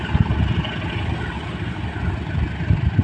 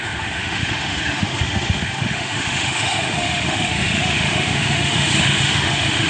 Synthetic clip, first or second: second